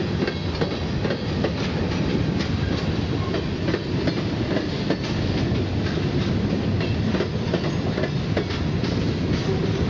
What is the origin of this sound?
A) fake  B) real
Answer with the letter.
B